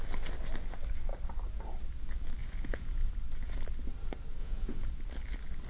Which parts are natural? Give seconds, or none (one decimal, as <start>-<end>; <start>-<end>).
0.0-2.4; 3.1-4.4; 4.9-5.7